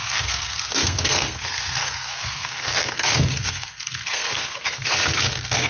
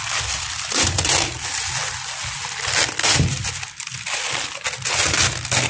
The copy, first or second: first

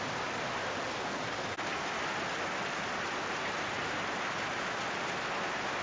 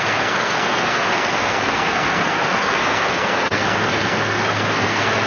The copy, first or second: second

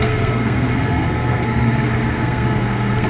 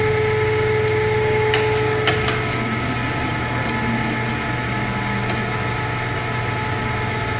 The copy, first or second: first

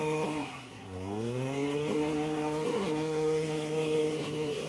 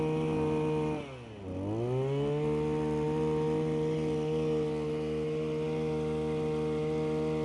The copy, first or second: first